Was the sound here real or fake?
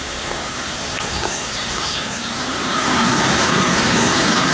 fake